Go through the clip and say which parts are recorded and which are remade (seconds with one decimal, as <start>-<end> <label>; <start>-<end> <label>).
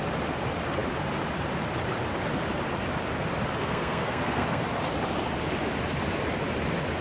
0.0-3.6 recorded; 3.6-4.6 remade; 4.6-7.0 recorded